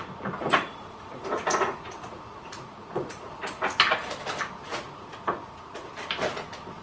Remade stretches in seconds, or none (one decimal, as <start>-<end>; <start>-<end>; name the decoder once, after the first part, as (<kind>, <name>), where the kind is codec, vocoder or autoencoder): 0.4-3.6 (vocoder, Vocos); 4.7-5.9